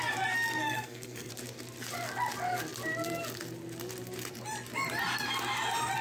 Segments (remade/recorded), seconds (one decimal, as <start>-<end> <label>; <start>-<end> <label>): 0.0-0.5 recorded; 0.5-1.3 remade; 1.3-6.0 recorded